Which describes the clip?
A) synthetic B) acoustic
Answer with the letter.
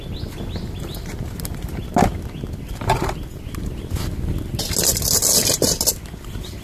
B